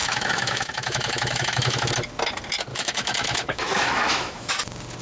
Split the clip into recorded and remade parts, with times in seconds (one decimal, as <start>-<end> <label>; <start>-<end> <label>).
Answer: 0.0-1.9 remade; 1.9-2.7 recorded; 2.7-4.5 remade; 4.5-5.0 recorded